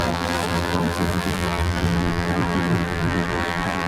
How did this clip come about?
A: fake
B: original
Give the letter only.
A